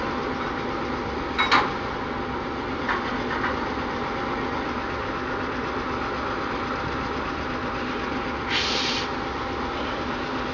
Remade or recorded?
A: recorded